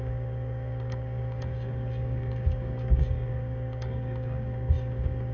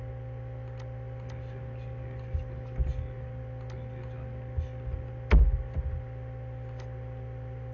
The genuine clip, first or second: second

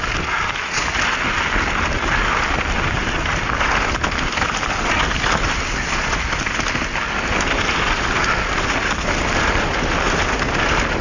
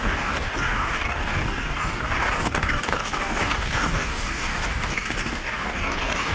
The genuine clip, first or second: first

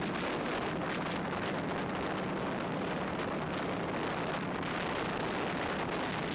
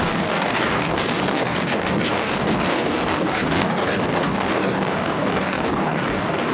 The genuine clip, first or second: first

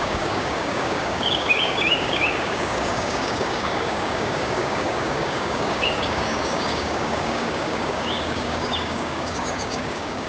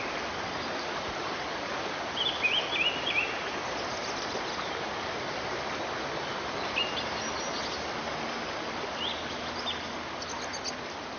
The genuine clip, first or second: second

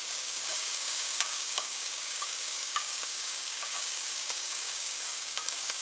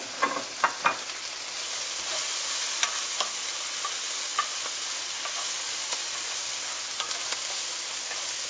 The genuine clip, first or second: second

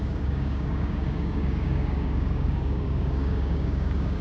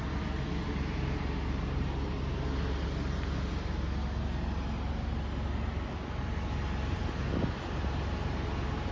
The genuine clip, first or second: second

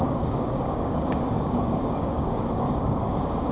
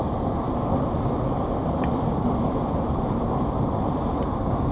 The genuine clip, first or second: second